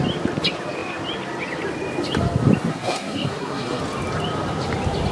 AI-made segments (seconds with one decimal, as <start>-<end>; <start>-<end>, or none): 2.7-3.8